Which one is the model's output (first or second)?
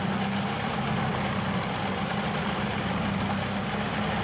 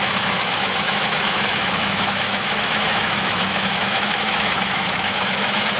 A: second